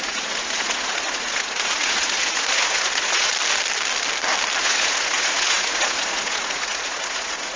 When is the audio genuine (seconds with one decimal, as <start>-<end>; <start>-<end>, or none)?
3.3-4.6